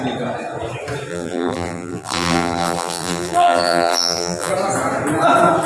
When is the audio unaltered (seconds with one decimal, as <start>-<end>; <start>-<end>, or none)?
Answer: 0.0-1.1; 4.5-5.7